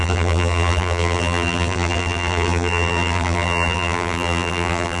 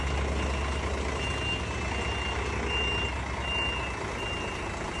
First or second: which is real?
second